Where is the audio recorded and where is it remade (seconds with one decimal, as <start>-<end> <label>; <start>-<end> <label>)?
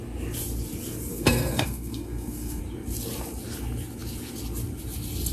0.0-1.1 recorded; 1.1-2.6 remade; 2.6-5.3 recorded